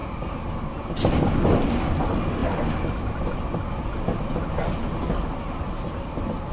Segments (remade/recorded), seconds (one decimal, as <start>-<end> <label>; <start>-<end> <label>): 0.0-6.5 recorded